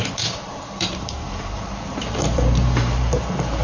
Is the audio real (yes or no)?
no